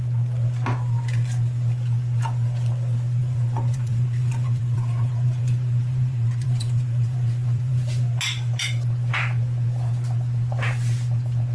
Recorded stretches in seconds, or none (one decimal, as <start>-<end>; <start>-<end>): 0.0-3.2; 8.1-11.5